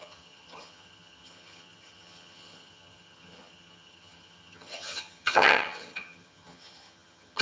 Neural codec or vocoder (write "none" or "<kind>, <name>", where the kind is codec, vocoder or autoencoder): vocoder, HiFi-GAN